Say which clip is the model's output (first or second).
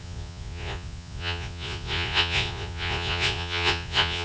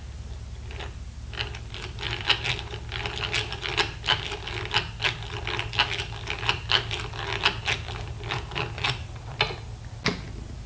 first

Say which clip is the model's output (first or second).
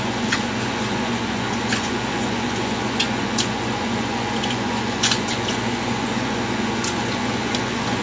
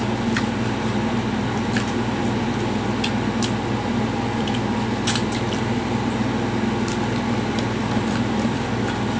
first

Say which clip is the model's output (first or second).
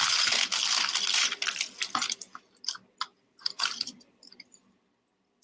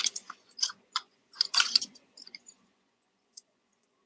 second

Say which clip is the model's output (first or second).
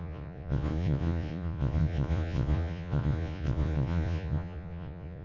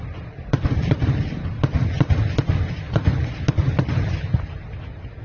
first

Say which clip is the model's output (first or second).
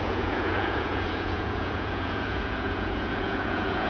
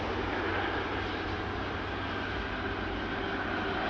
first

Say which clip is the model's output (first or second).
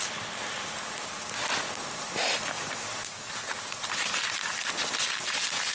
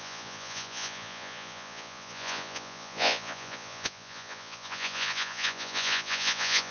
second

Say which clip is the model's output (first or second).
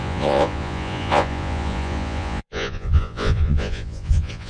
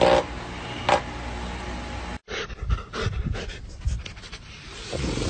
first